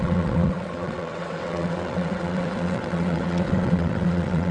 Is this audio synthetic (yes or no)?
yes